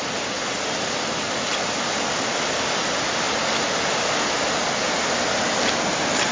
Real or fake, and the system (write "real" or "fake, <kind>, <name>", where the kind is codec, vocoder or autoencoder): real